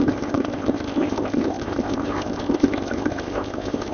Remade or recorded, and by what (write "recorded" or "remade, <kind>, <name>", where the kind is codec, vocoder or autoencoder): remade, codec, ZipCodec